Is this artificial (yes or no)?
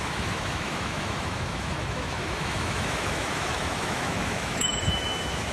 yes